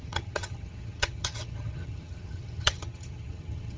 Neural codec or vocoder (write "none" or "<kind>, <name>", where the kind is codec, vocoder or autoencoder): vocoder, HiFi-GAN